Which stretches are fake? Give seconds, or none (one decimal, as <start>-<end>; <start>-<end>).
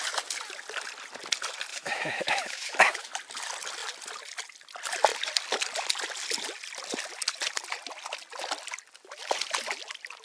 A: 1.7-3.1